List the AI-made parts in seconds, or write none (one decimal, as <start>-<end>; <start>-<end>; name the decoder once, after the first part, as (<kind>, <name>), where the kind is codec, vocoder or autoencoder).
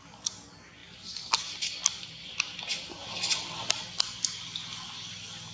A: none